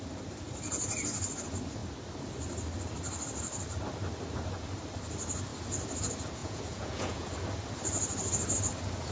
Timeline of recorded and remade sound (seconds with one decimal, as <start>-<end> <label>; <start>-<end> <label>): 0.0-6.4 recorded; 6.4-7.3 remade; 7.3-9.1 recorded